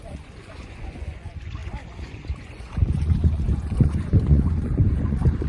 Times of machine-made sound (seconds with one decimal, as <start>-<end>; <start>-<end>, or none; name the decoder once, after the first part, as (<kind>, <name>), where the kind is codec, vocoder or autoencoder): 0.0-5.5 (vocoder, Vocos)